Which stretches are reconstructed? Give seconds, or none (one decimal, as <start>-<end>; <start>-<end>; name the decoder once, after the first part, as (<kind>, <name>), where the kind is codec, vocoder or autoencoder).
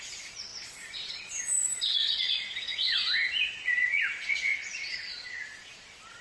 0.0-6.2 (vocoder, Vocos)